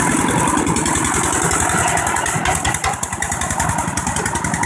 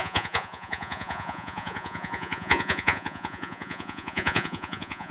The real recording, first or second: first